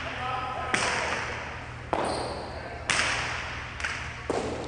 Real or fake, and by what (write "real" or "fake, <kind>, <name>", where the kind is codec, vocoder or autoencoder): real